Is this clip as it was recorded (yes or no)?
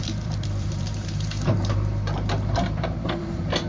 no